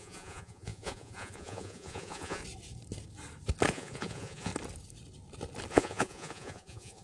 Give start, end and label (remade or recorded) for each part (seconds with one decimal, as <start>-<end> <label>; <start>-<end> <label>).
0.0-2.4 remade; 2.4-3.7 recorded; 3.7-4.5 remade; 4.5-5.7 recorded; 5.7-7.0 remade